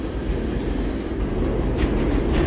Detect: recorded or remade recorded